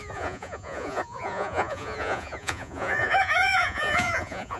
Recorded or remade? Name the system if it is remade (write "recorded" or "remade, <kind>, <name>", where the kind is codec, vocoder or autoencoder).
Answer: remade, vocoder, Vocos